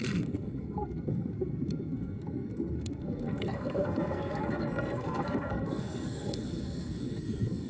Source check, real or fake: fake